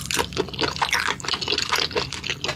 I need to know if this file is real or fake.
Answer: real